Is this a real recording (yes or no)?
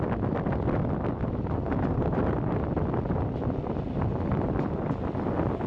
yes